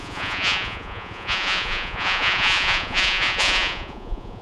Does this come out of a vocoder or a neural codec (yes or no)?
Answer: yes